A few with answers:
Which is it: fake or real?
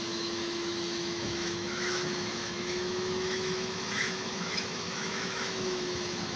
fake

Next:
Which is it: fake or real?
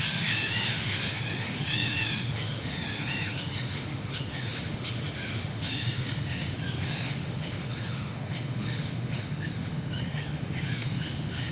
fake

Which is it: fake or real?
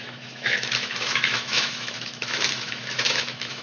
fake